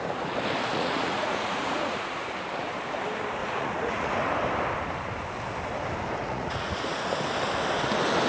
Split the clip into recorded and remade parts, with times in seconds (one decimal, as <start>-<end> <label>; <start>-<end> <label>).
0.0-0.7 recorded; 0.7-2.3 remade; 2.3-3.4 recorded; 3.4-4.1 remade; 4.1-6.2 recorded; 6.2-7.1 remade; 7.1-8.3 recorded